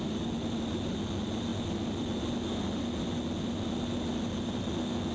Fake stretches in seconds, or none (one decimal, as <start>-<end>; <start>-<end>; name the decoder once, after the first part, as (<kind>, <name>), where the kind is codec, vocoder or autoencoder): none